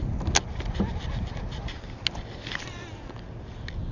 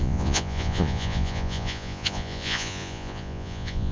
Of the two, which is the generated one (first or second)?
second